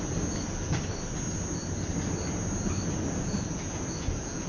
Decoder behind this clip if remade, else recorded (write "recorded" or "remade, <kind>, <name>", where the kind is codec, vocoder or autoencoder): recorded